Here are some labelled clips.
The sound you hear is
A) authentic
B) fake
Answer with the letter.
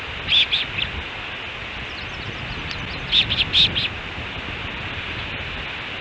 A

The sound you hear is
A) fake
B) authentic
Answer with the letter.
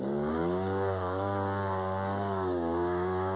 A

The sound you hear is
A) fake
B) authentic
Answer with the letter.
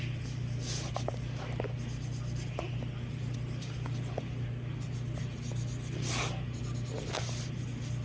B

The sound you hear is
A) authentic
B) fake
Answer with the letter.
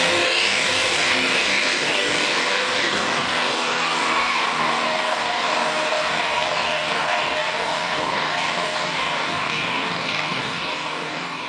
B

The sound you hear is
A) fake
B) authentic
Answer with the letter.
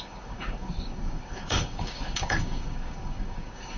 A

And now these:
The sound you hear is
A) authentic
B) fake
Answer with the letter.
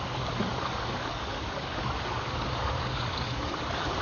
B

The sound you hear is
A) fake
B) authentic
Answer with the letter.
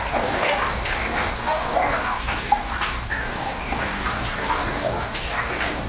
A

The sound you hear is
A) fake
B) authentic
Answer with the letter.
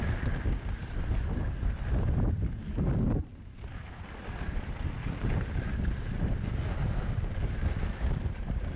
B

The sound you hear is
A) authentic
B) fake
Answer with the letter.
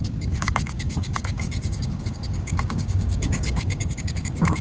B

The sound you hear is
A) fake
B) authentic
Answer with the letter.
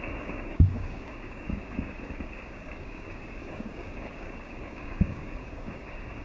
A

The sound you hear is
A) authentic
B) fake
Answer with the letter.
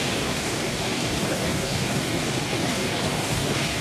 B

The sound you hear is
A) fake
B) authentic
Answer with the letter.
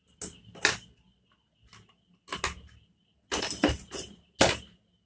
B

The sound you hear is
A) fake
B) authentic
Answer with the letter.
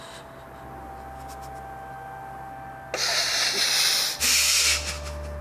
B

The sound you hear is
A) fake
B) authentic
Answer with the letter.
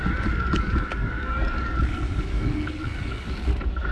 A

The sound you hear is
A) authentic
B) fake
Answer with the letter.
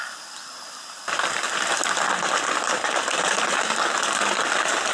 A